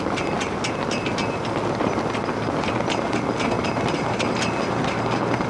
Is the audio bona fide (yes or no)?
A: yes